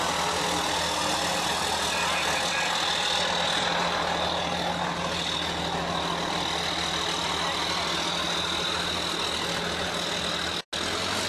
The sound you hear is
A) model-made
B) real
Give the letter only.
B